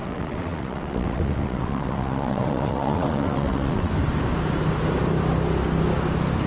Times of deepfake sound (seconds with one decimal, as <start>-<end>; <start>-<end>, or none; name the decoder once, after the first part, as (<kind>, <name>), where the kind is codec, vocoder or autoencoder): 0.0-3.9 (vocoder, WaveNeXt)